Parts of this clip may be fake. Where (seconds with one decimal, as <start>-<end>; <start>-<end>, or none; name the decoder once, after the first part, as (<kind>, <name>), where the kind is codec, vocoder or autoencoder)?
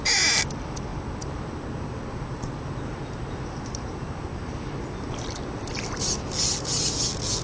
none